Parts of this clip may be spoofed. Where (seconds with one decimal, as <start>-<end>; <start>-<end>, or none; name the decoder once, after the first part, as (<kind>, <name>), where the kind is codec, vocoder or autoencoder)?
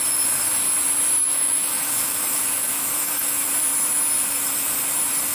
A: 1.2-3.5 (autoencoder, DAC-VAE)